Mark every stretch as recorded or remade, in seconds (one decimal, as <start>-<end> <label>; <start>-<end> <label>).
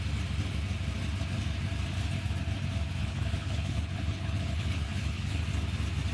0.0-3.0 recorded; 3.0-5.4 remade; 5.4-6.1 recorded